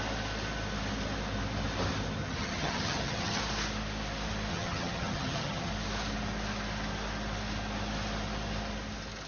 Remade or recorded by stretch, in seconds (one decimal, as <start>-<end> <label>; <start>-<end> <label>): 0.0-2.2 recorded; 2.2-3.4 remade; 3.4-4.5 recorded; 4.5-5.7 remade; 5.7-9.3 recorded